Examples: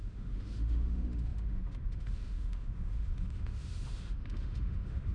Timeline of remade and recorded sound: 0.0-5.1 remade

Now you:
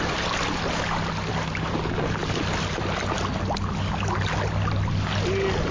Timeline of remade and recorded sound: 0.0-5.7 recorded

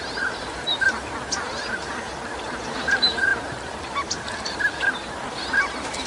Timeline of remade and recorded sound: 0.0-6.1 recorded

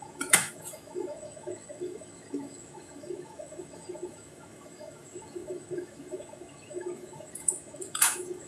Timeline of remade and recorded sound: 0.0-8.5 remade

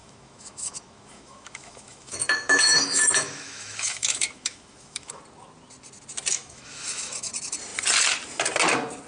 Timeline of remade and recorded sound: 0.0-5.2 remade; 5.2-6.3 recorded; 6.3-7.3 remade; 7.3-9.1 recorded

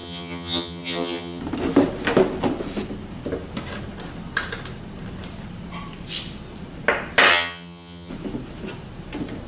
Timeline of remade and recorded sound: 0.0-1.4 remade; 1.4-7.3 recorded; 7.3-8.1 remade; 8.1-9.5 recorded